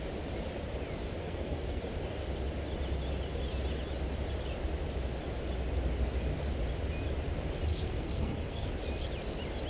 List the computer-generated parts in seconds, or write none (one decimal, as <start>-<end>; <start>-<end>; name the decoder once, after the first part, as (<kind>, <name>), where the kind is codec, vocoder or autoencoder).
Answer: 1.2-1.8 (codec, SNAC); 7.7-8.7